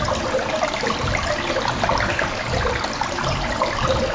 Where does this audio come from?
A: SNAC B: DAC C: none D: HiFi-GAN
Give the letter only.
C